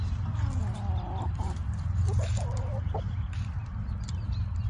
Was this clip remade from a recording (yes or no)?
no